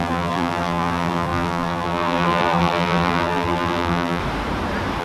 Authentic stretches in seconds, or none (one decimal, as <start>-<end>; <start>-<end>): 4.2-5.0